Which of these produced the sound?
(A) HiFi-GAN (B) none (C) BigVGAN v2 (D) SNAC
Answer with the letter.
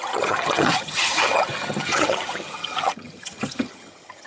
A